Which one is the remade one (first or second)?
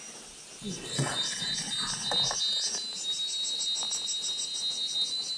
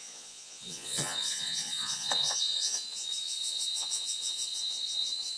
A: second